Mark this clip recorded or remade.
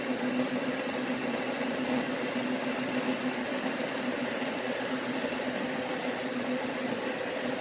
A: recorded